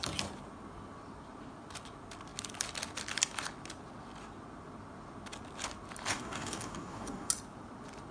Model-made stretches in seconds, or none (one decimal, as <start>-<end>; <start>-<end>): 6.1-7.3